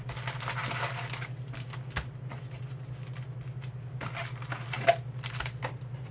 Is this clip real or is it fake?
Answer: real